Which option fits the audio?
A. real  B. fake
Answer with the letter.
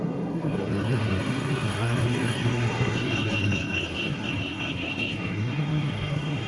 B